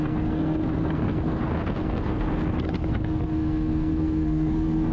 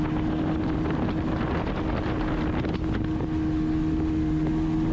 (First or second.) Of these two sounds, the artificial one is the first